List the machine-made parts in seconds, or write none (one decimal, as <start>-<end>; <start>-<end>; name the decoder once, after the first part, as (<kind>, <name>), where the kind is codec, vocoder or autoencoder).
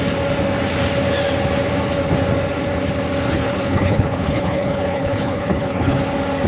3.3-6.0 (codec, HILCodec)